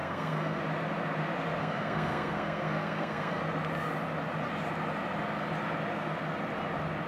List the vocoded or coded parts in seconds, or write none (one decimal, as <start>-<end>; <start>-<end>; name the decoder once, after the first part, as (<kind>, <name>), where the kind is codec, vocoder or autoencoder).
0.0-0.6 (codec, SNAC); 1.6-3.4